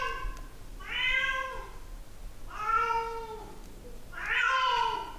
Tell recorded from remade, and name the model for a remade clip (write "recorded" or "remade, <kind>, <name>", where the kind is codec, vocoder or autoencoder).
recorded